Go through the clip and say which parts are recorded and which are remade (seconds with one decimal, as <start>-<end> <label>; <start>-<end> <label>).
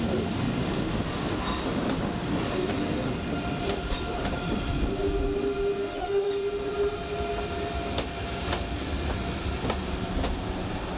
0.0-5.8 recorded; 5.8-6.3 remade; 6.3-11.0 recorded